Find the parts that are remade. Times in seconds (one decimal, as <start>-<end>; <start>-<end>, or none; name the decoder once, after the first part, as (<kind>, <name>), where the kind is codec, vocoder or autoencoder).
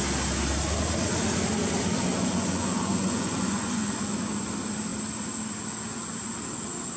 2.1-3.9 (vocoder, Vocos)